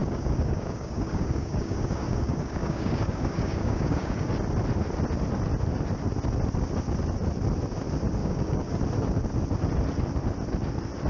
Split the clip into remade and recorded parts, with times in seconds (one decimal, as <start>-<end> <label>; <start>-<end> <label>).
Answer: 0.0-4.3 remade; 4.3-8.2 recorded; 8.2-8.8 remade; 8.8-11.1 recorded